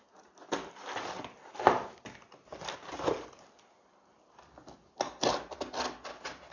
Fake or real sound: real